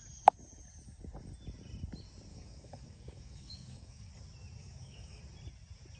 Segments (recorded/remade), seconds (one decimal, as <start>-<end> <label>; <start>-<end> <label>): 0.0-2.3 recorded; 2.3-4.1 remade; 4.1-4.6 recorded; 4.6-5.2 remade; 5.2-6.0 recorded

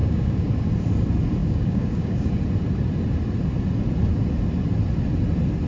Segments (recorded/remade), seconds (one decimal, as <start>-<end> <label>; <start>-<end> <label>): 0.0-0.5 remade; 0.5-1.4 recorded; 1.4-2.3 remade; 2.3-5.7 recorded